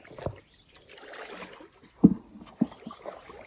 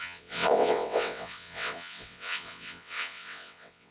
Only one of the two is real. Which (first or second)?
first